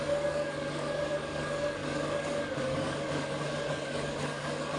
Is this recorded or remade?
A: remade